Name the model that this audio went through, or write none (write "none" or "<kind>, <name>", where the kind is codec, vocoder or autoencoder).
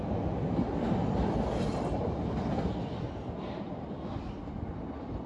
none